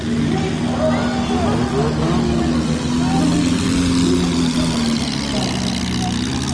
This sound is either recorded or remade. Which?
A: recorded